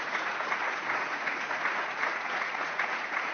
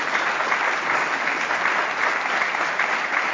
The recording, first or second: second